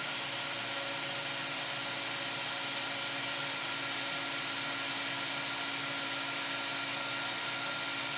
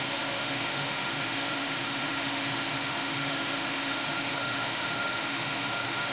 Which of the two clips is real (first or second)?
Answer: first